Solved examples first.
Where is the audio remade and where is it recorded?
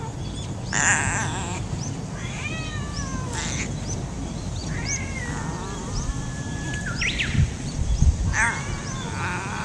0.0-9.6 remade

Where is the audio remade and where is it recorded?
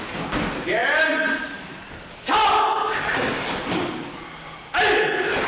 0.0-5.5 recorded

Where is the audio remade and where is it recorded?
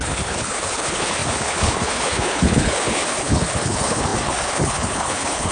0.0-5.5 remade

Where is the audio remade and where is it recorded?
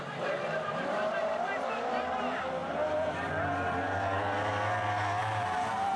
0.0-2.6 recorded; 2.6-3.3 remade; 3.3-5.2 recorded; 5.2-6.0 remade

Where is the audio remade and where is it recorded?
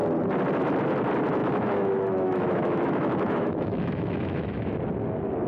0.0-1.4 recorded; 1.4-4.7 remade; 4.7-5.5 recorded